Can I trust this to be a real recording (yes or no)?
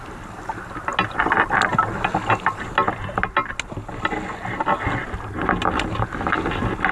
yes